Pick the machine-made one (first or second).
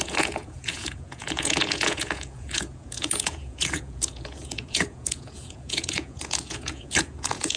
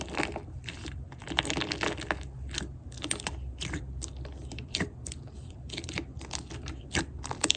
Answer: first